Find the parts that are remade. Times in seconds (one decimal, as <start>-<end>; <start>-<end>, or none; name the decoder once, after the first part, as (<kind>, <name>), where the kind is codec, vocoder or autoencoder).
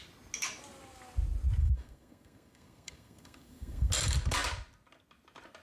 1.6-3.9 (codec, SNAC)